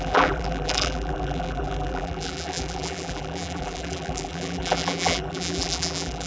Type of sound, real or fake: fake